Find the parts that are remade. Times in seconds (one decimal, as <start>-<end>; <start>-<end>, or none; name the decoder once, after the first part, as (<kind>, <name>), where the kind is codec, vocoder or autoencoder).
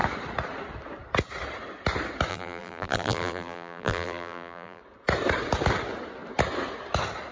2.3-4.8 (vocoder, BigVGAN v2)